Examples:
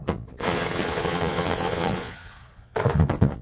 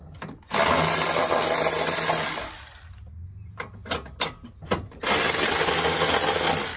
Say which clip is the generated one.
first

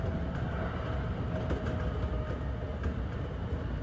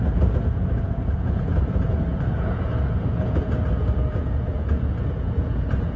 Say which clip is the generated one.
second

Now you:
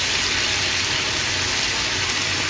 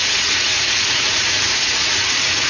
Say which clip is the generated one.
second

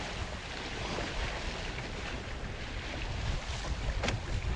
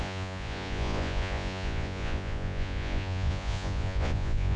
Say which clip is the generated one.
second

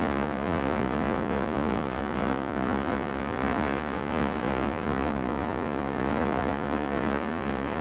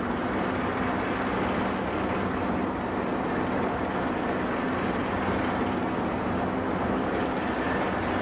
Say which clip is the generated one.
first